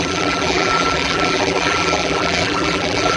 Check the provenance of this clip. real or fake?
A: fake